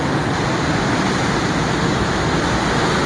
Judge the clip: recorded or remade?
recorded